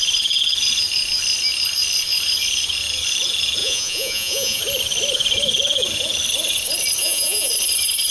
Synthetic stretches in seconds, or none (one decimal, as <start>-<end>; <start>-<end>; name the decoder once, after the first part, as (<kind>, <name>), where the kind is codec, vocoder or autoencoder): 3.6-4.6 (vocoder, Vocos); 7.0-7.5